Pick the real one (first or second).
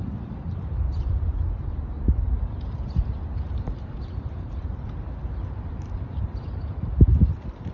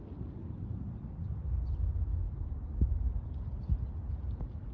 second